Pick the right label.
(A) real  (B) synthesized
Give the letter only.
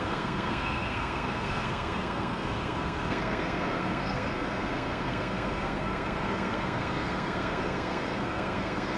B